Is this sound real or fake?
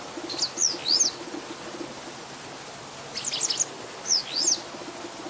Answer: real